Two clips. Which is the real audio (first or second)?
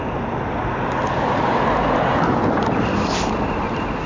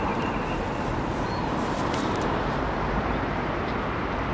first